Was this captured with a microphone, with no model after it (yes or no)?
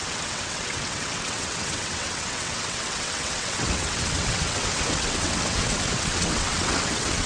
no